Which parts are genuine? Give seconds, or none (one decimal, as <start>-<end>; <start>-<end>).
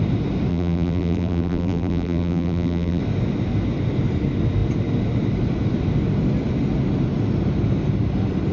0.0-0.5; 3.0-8.5